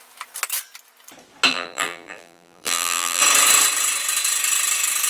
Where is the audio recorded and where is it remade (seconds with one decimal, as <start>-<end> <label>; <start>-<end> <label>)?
0.0-1.5 recorded; 1.5-3.2 remade; 3.2-5.1 recorded

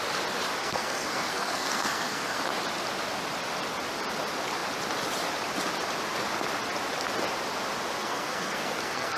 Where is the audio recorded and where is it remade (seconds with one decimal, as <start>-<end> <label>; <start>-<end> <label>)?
0.0-0.6 recorded; 0.6-2.4 remade; 2.4-8.0 recorded; 8.0-9.2 remade

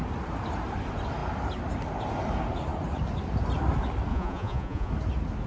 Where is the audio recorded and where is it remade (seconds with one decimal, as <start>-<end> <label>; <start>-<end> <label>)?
0.0-4.1 recorded; 4.1-4.9 remade; 4.9-5.5 recorded